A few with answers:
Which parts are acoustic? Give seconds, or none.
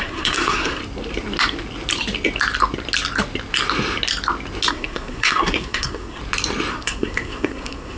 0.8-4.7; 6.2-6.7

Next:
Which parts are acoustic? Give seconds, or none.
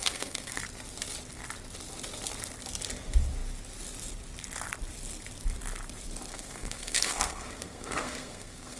0.6-6.3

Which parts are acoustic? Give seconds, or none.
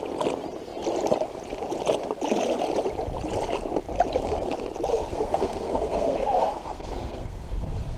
0.0-4.9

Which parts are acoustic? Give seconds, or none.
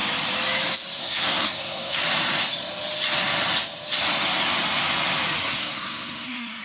0.0-1.0; 2.0-5.4